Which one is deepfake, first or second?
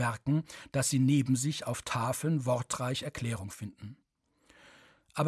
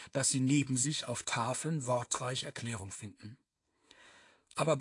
second